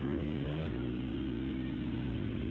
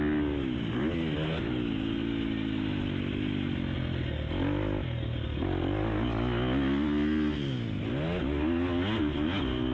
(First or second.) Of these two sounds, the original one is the second